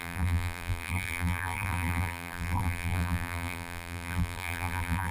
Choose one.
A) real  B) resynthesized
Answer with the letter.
B